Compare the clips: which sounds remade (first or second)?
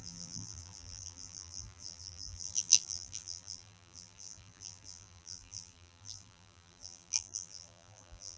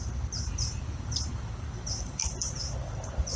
first